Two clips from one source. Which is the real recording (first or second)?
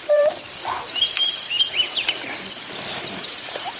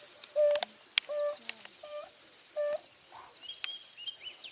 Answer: second